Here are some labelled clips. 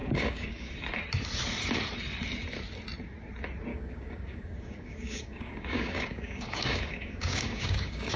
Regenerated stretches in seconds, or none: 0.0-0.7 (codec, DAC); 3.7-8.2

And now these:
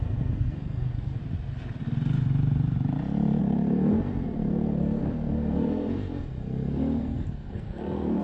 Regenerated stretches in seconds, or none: 0.0-1.2 (codec, SNAC); 3.4-8.2

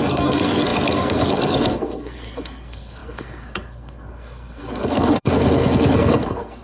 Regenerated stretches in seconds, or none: 0.0-6.6 (codec, SNAC)

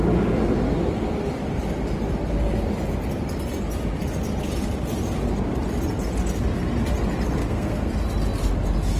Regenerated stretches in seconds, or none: 7.4-7.9 (codec, SNAC)

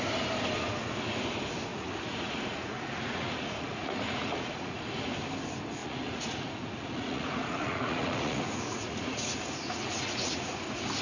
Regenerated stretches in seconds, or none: 1.7-4.8 (vocoder, Vocos); 5.8-11.0

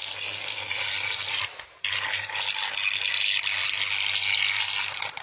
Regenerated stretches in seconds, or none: none

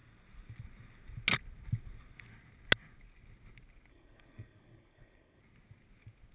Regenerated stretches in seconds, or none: 3.9-5.4 (codec, SNAC)